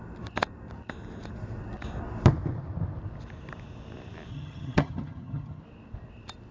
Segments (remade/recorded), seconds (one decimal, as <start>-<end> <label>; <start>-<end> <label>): 0.0-4.3 recorded; 4.3-5.6 remade; 5.6-6.5 recorded